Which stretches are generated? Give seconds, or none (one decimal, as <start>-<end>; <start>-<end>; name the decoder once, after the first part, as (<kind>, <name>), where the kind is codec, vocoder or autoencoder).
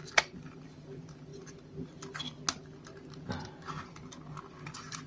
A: 0.0-1.3 (vocoder, BigVGAN v2); 4.4-5.1